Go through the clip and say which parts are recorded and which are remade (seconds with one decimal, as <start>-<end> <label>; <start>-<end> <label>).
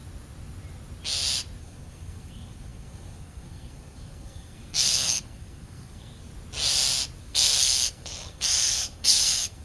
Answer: 0.0-1.6 recorded; 1.6-6.3 remade; 6.3-7.2 recorded; 7.2-9.6 remade